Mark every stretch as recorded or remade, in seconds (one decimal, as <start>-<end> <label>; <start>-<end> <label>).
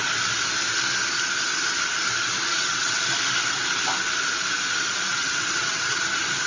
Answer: 0.0-2.5 recorded; 2.5-3.0 remade; 3.0-5.1 recorded; 5.1-6.0 remade; 6.0-6.5 recorded